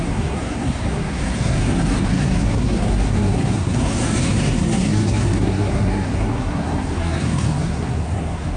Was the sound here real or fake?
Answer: fake